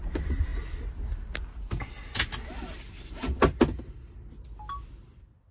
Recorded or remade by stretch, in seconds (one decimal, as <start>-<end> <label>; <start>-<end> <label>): 0.0-5.5 recorded